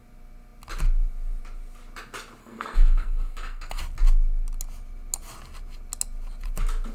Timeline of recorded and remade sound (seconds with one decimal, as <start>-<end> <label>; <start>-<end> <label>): 0.0-2.4 recorded; 2.4-3.8 remade; 3.8-6.9 recorded